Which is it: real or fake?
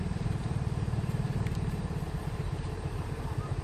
fake